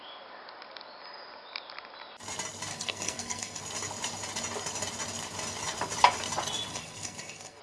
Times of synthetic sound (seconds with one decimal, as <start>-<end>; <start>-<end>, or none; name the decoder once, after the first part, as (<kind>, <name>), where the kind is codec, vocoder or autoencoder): 2.7-3.6 (codec, SNAC); 6.7-7.6